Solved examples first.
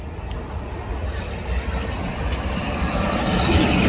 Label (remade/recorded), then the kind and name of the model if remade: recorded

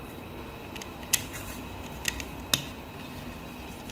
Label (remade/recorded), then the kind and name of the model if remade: recorded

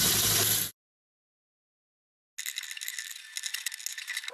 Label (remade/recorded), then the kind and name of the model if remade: recorded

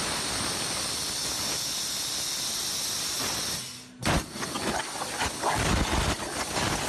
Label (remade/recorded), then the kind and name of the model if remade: recorded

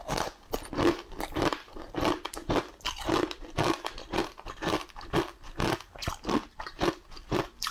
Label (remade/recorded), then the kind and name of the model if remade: remade, vocoder, BigVGAN v2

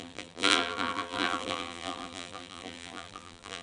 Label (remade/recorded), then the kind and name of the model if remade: remade, vocoder, BigVGAN v2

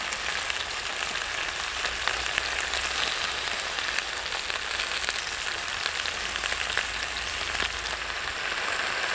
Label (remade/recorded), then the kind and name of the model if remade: recorded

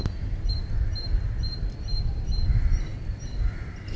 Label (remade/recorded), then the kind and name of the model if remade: recorded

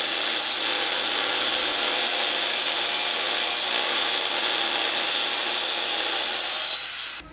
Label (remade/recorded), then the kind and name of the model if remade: recorded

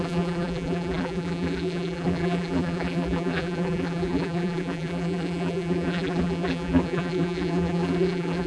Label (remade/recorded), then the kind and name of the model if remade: remade, vocoder, BigVGAN v2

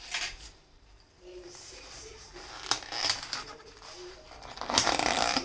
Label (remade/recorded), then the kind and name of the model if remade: remade, vocoder, BigVGAN v2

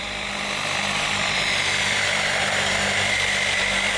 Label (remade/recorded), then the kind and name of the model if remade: remade, vocoder, BigVGAN v2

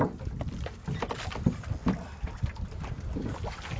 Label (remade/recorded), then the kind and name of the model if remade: recorded